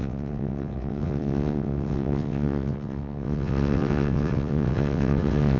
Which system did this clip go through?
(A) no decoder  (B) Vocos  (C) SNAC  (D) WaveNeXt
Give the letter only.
D